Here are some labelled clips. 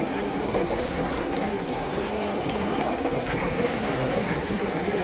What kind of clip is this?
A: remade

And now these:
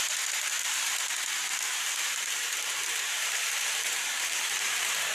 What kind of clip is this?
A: remade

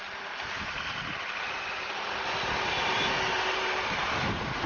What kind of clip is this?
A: recorded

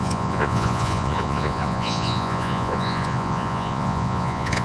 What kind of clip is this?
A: remade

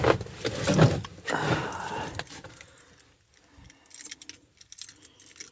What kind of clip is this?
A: recorded